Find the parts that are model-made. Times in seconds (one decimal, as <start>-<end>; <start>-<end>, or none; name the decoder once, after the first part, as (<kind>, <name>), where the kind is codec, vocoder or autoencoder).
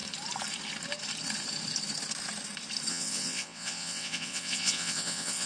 2.9-5.5 (vocoder, WaveNeXt)